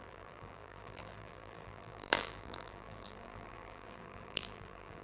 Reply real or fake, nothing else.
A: fake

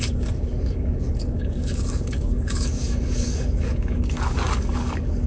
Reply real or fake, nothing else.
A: fake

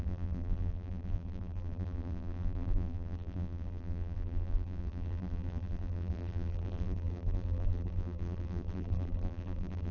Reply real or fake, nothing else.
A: fake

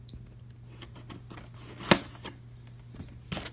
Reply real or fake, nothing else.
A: real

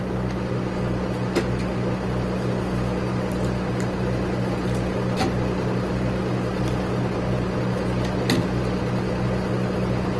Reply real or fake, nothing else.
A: real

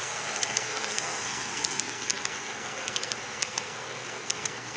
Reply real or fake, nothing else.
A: fake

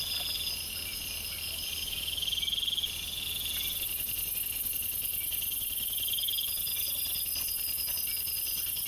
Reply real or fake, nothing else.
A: real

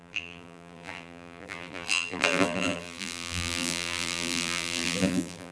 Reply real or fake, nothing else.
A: fake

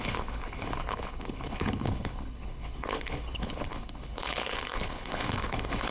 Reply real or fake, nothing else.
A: fake